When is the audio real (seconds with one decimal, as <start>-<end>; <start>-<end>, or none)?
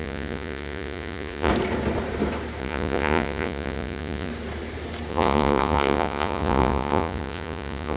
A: 1.5-2.6; 4.3-5.1